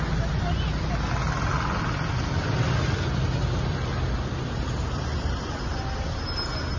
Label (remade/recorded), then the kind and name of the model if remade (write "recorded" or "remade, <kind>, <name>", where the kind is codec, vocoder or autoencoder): recorded